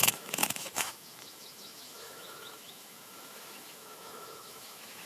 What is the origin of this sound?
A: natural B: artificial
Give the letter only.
B